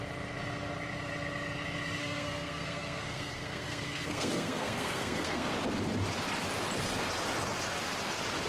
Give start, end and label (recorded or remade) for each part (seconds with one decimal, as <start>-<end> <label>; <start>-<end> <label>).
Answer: 0.0-2.0 recorded; 2.0-5.5 remade; 5.5-8.5 recorded